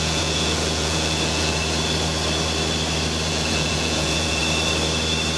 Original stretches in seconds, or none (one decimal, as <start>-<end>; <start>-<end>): 1.6-3.3; 4.4-5.4